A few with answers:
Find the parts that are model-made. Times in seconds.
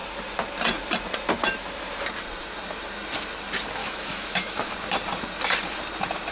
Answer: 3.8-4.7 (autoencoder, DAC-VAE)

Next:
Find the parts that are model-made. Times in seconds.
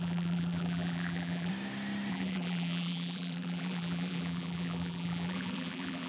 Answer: 0.0-1.5 (vocoder, BigVGAN v2); 2.1-6.1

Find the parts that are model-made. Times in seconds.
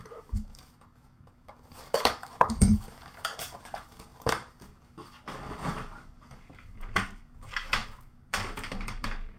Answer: 0.0-9.4 (codec, DAC)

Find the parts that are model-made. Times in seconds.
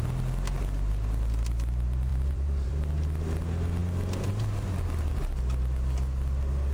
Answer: 2.1-2.8 (vocoder, BigVGAN v2)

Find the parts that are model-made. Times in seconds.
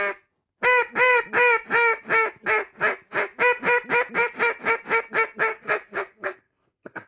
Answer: 5.5-7.1 (codec, SNAC)